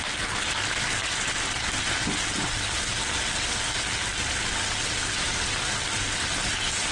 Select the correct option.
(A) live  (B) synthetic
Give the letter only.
A